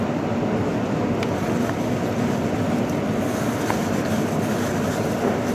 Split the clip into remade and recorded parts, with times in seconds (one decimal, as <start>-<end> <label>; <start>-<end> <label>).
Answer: 0.0-5.5 recorded